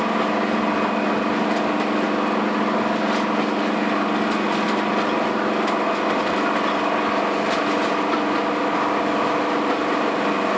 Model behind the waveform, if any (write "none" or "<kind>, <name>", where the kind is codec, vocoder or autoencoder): none